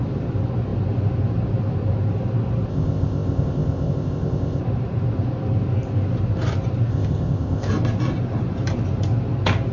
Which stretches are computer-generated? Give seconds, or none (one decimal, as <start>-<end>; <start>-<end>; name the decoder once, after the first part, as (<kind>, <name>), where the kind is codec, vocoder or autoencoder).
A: 2.7-4.6 (codec, ZipCodec); 6.9-7.7